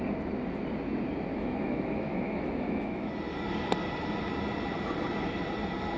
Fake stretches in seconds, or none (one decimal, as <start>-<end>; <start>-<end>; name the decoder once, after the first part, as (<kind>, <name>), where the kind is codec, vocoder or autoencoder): 1.3-3.1 (autoencoder, DAC-VAE)